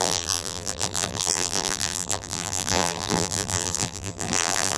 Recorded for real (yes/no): no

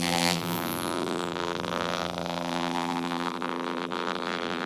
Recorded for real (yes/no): no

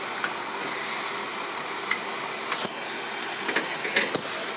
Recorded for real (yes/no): yes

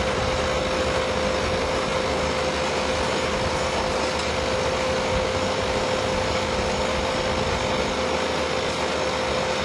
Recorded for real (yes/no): yes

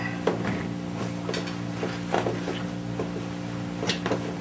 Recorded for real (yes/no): yes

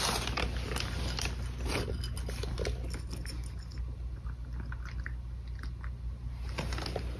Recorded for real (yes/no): yes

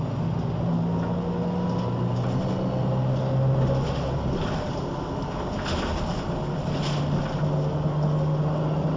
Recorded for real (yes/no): yes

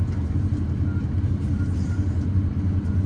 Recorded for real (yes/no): yes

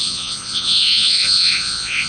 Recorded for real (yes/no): no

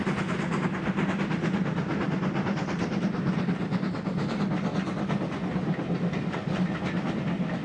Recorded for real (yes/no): yes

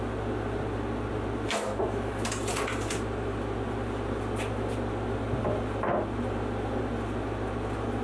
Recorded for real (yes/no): yes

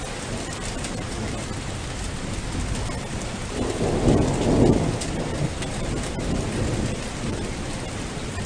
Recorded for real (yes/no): yes